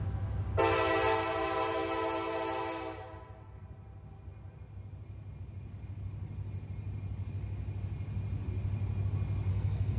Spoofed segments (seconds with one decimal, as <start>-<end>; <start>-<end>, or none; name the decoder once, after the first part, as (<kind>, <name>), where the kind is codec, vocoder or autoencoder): 9.5-10.0 (codec, SNAC)